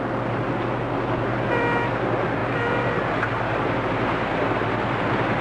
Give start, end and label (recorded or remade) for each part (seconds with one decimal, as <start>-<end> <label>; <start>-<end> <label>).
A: 0.0-5.4 recorded